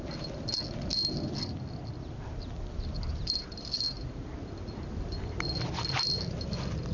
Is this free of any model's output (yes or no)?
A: yes